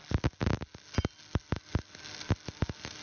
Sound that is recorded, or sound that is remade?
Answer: recorded